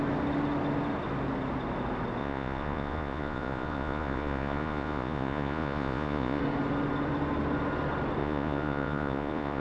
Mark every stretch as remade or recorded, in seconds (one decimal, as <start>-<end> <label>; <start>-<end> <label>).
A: 0.0-2.2 recorded; 2.2-6.4 remade; 6.4-8.2 recorded; 8.2-9.6 remade